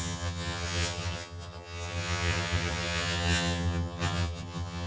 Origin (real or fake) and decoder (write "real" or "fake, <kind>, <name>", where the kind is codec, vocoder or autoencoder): fake, vocoder, HiFi-GAN